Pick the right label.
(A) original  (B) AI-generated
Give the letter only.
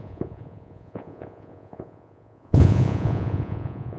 B